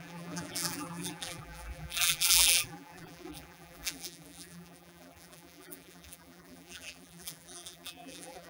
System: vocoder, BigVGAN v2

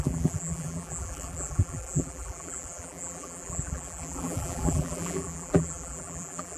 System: vocoder, BigVGAN v2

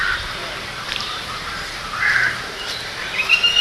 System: vocoder, BigVGAN v2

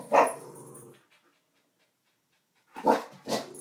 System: none